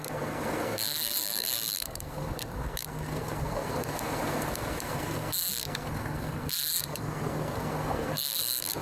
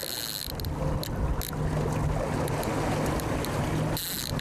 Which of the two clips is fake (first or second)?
first